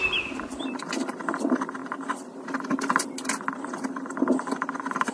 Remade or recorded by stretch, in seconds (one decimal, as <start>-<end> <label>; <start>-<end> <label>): 0.0-5.1 recorded